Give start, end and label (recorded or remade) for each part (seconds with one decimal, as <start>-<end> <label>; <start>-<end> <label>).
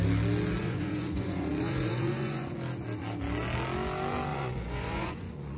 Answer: 0.0-0.6 recorded; 0.6-2.5 remade; 2.5-4.3 recorded; 4.3-5.6 remade